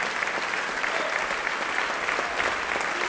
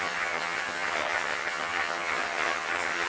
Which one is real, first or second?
first